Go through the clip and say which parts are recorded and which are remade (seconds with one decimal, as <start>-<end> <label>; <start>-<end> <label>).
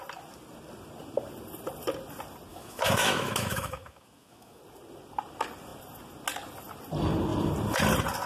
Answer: 0.0-2.5 recorded; 2.5-4.6 remade; 4.6-8.3 recorded